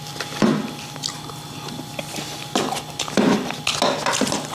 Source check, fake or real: real